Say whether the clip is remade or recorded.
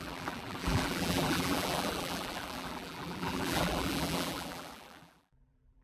remade